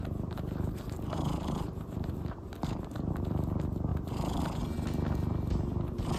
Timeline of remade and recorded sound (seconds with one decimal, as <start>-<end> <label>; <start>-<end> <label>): 0.0-3.1 remade; 3.1-3.9 recorded; 3.9-4.6 remade; 4.6-6.2 recorded